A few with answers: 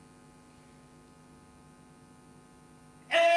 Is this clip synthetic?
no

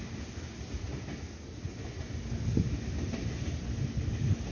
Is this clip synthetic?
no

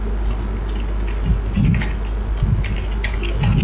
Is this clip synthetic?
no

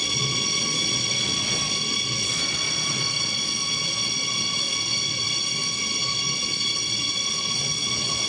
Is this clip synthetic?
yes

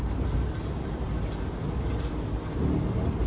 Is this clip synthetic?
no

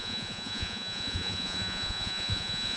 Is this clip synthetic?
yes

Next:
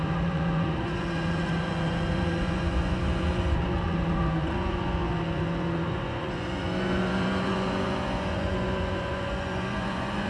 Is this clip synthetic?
yes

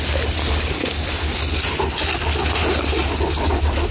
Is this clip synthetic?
no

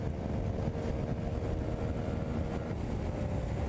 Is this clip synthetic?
no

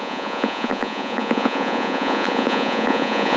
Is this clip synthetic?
yes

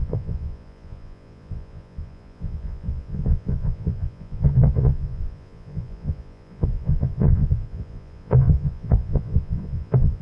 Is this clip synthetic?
yes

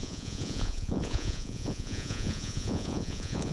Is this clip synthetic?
yes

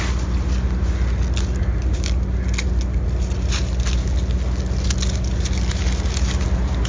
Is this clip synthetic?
no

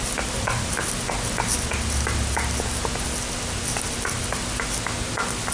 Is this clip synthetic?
no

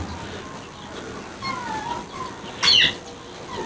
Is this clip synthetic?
no